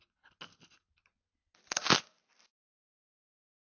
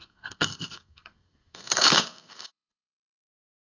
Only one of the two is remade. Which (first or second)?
second